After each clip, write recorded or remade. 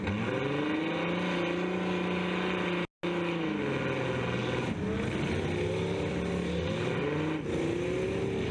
recorded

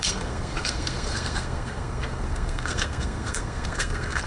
remade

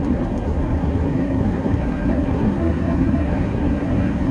remade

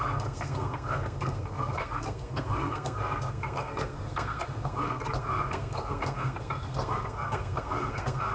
remade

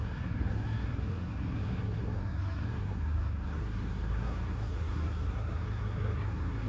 remade